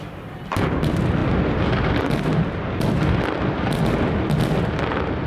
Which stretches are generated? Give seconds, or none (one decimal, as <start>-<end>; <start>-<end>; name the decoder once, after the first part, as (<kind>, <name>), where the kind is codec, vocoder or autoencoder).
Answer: none